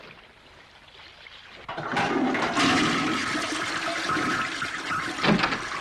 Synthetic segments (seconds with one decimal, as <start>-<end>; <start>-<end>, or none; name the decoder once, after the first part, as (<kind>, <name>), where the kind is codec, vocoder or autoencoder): none